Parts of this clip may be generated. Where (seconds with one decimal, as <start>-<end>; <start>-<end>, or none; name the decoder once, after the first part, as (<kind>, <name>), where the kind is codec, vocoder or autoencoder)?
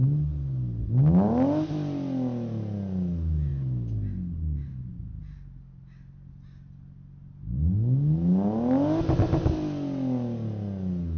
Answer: none